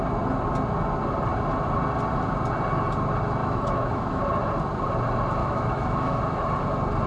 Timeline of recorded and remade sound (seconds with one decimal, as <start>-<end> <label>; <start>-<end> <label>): 0.0-3.4 recorded; 3.4-4.2 remade; 4.2-5.4 recorded; 5.4-6.2 remade; 6.2-7.1 recorded